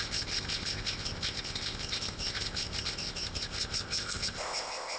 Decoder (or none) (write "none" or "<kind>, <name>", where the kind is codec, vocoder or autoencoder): codec, ZipCodec